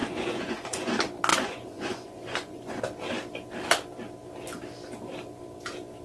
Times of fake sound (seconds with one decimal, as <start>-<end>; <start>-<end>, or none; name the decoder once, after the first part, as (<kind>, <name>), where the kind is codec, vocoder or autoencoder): 0.0-0.9 (vocoder, Vocos); 1.3-2.8